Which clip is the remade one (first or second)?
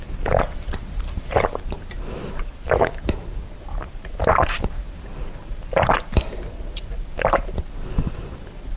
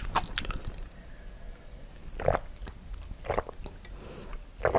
first